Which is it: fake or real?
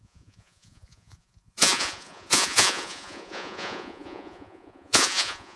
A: fake